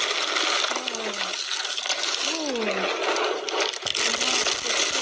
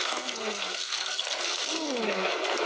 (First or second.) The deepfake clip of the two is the second